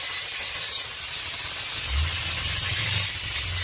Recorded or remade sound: recorded